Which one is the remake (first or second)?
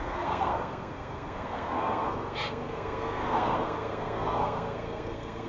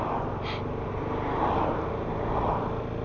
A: first